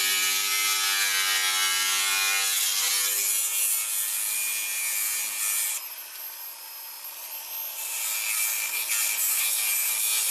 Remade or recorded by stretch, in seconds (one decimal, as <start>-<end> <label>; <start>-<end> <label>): 0.0-10.3 recorded